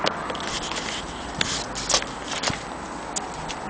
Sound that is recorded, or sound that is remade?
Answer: recorded